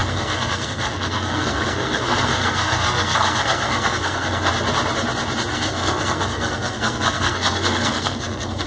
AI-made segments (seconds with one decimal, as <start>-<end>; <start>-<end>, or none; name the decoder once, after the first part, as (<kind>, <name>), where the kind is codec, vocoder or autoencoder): 0.0-4.5 (codec, SNAC); 5.5-8.7